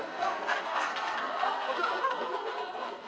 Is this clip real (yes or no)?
no